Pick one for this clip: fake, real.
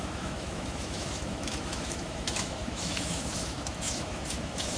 fake